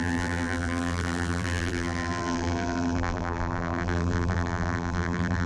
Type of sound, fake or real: fake